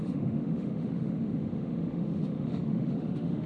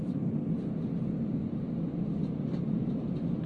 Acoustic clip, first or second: second